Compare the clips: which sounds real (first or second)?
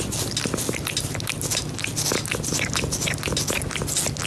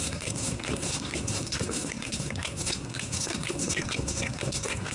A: first